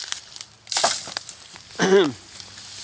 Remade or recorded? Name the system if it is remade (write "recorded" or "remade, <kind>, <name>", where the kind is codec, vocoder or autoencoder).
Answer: recorded